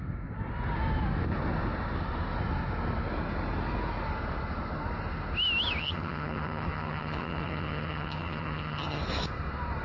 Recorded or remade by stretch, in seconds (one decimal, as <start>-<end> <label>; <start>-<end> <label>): 0.0-5.8 recorded; 5.8-9.0 remade; 9.0-9.8 recorded